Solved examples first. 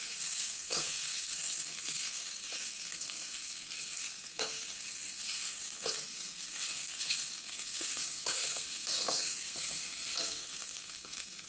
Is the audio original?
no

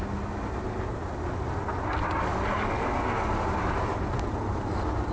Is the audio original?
yes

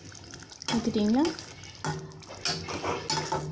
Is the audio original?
yes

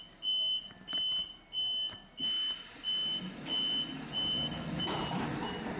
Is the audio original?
yes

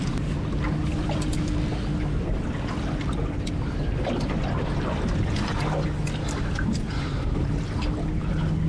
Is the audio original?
yes